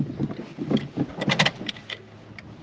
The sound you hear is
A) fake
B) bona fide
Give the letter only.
B